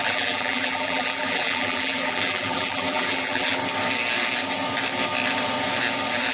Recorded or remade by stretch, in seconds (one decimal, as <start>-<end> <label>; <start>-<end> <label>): 0.0-3.6 remade; 3.6-6.3 recorded